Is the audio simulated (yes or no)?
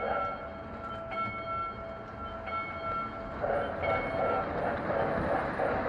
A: no